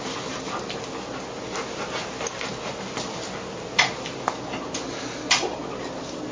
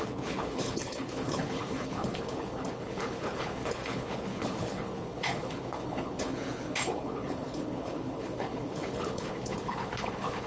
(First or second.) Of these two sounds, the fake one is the second